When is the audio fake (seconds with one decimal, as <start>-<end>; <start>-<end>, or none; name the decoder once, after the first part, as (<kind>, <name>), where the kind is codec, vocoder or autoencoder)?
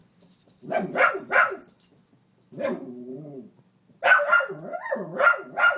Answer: none